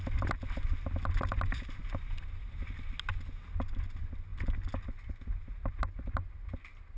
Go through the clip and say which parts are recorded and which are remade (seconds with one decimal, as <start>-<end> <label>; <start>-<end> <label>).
0.0-7.0 recorded